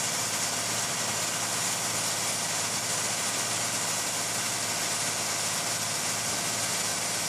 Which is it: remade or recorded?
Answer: recorded